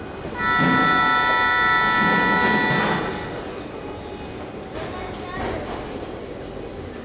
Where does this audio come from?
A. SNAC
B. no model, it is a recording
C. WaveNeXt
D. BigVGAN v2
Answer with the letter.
B